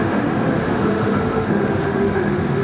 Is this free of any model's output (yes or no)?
no